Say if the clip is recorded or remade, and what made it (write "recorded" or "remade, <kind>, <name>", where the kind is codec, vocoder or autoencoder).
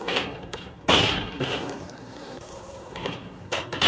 remade, codec, SNAC